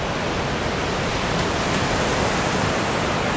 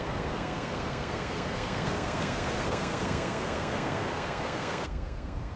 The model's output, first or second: second